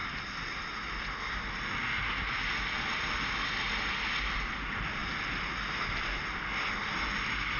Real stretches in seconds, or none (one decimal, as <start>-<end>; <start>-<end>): 0.0-7.6